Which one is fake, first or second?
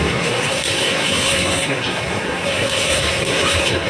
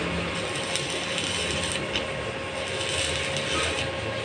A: first